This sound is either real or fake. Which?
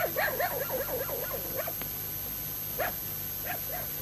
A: real